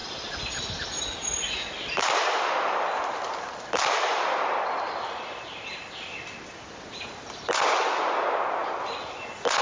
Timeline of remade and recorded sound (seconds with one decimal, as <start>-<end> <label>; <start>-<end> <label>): 0.0-9.6 recorded